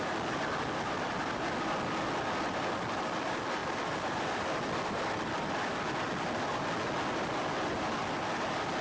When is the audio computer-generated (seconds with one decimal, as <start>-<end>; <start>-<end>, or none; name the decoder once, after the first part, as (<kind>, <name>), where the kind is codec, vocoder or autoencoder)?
none

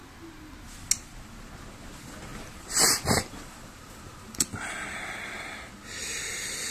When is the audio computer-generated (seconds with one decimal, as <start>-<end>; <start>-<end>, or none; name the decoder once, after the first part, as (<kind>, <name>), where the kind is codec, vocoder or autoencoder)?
2.3-4.4 (vocoder, BigVGAN v2)

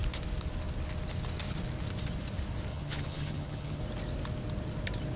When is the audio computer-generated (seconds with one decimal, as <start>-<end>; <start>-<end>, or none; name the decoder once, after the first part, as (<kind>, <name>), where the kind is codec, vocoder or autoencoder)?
2.7-3.8 (vocoder, HiFi-GAN)

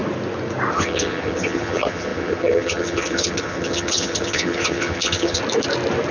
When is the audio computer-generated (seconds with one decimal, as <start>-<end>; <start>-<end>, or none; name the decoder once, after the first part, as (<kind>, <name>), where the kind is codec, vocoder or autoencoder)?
0.7-5.4 (vocoder, HiFi-GAN)

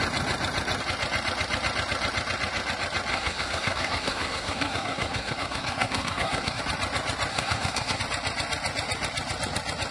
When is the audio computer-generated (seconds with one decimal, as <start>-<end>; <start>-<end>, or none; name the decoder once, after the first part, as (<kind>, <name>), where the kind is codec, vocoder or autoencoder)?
3.1-6.6 (codec, SNAC); 7.3-8.0

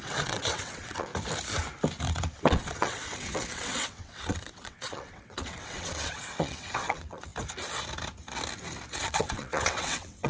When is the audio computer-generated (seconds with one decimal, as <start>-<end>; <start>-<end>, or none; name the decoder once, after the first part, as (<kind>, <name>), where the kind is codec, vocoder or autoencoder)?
0.0-1.1 (vocoder, WaveNeXt); 2.0-7.3; 8.9-10.3

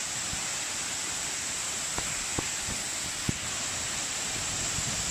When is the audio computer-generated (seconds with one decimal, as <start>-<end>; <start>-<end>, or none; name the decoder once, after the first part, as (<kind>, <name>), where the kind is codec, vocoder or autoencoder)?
none